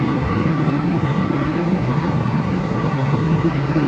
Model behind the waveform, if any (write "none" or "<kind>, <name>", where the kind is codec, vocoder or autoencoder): codec, SNAC